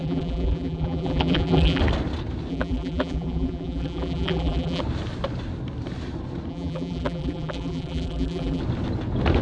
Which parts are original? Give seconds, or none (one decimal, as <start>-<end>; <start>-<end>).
1.8-2.5; 4.8-6.5; 8.6-9.4